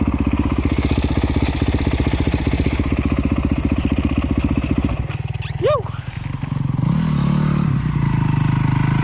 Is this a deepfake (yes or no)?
no